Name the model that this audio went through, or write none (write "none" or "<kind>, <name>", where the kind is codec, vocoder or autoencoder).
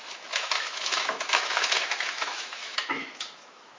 autoencoder, DAC-VAE